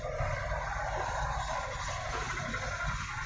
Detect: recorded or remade recorded